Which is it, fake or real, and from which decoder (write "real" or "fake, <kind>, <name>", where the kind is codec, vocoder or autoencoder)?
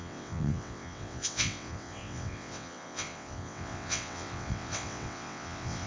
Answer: fake, vocoder, WaveNeXt